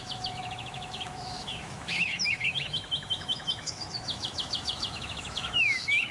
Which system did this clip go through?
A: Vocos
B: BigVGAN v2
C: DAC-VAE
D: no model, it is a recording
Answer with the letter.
C